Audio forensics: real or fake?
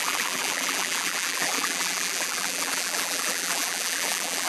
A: fake